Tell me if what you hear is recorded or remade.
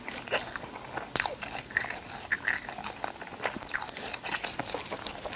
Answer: recorded